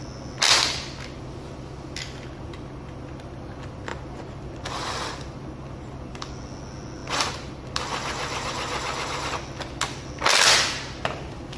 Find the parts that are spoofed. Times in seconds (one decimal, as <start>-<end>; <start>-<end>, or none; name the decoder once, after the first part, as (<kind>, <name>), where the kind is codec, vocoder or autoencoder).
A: none